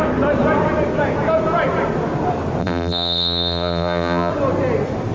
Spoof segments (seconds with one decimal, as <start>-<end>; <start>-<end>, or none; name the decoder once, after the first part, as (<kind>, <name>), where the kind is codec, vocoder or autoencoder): 2.6-4.3 (vocoder, BigVGAN v2)